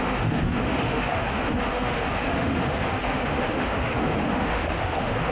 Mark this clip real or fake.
fake